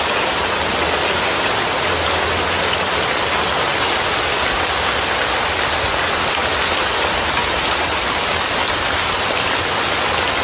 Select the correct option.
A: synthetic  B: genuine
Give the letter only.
B